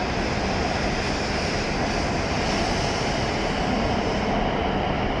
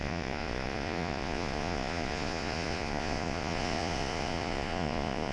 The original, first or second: first